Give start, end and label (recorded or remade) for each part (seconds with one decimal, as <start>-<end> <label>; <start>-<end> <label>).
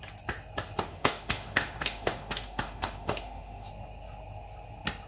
0.0-0.9 recorded; 0.9-3.7 remade; 3.7-5.1 recorded